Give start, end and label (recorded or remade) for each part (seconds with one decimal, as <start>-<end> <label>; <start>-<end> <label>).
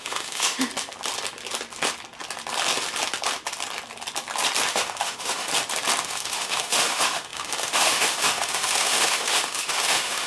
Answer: 0.0-0.7 remade; 0.7-4.7 recorded; 4.7-5.5 remade; 5.5-6.0 recorded; 6.0-10.3 remade